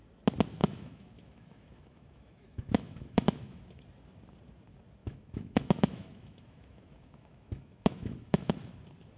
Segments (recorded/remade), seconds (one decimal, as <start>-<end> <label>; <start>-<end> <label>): 0.0-0.6 recorded; 0.6-3.6 remade; 3.6-5.0 recorded; 5.0-8.5 remade; 8.5-9.2 recorded